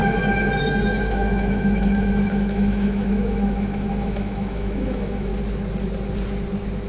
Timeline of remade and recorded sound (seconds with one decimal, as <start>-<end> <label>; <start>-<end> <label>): 0.0-0.6 recorded; 0.6-5.3 remade; 5.3-6.9 recorded